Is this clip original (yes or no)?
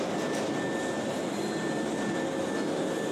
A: yes